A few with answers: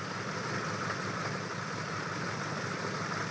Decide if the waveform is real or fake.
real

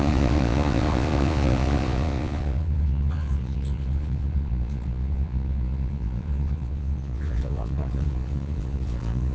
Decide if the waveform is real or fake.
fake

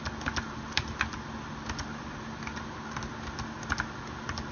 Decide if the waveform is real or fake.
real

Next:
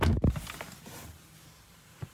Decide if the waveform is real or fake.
real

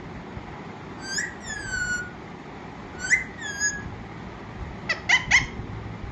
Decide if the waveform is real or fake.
real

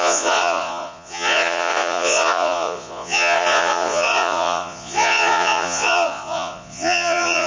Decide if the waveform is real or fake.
fake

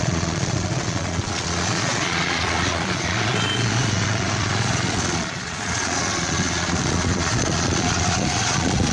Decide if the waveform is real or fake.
fake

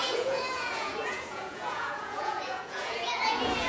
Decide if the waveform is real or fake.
fake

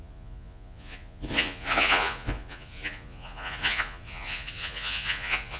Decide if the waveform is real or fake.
fake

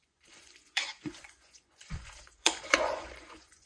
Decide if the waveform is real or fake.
fake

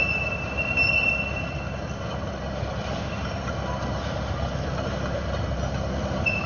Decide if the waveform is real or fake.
real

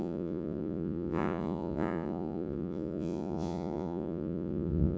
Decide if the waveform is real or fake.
fake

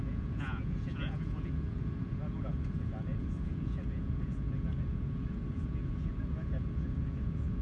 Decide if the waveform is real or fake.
fake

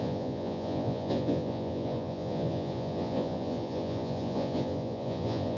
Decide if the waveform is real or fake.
fake